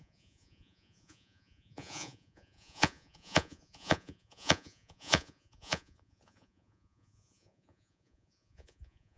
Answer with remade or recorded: remade